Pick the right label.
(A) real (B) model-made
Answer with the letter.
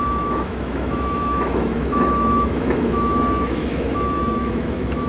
B